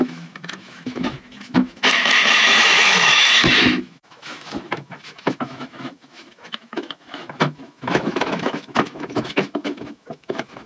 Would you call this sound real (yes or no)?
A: no